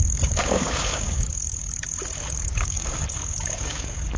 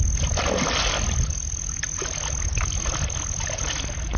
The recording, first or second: second